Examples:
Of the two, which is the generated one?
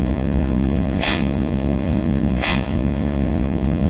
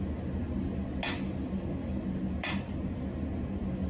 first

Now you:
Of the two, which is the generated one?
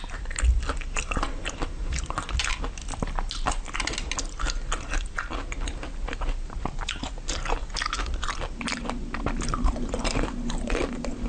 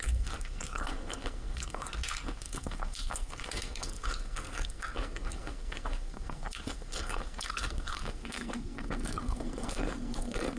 second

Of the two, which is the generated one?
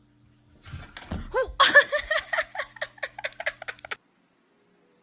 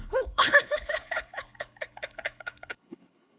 second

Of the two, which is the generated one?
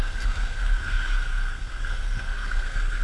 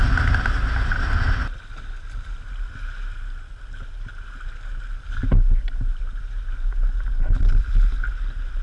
first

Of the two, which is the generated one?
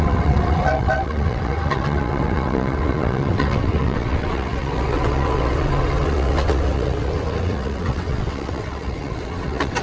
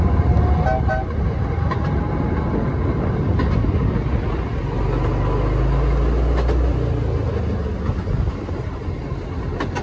first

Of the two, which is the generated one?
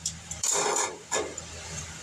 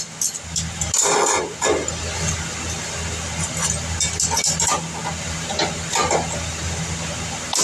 first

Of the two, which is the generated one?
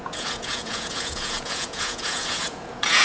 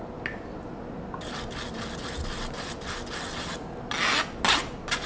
first